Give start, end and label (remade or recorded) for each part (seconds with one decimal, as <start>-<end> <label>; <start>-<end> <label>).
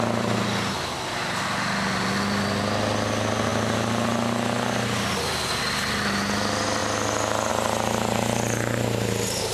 0.0-9.5 recorded